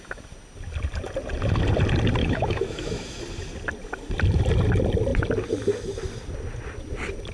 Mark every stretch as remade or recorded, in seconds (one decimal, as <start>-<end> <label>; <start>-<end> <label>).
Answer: 0.0-2.2 recorded; 2.2-3.2 remade; 3.2-7.3 recorded